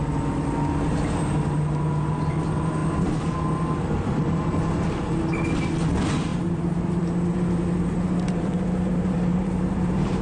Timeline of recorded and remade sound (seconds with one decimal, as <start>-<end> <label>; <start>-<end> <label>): 0.0-6.3 recorded; 6.3-10.2 remade